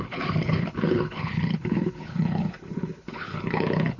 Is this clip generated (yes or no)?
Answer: yes